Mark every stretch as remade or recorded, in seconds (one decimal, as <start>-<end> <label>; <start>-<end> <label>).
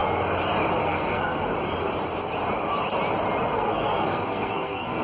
0.0-0.8 recorded; 0.8-1.5 remade; 1.5-3.5 recorded; 3.5-5.0 remade